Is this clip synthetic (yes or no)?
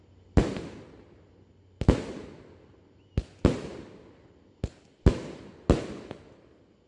no